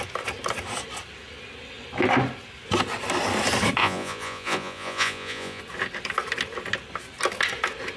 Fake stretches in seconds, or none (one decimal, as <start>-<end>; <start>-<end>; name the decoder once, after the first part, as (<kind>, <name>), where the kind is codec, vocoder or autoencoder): 3.8-5.6 (vocoder, Vocos)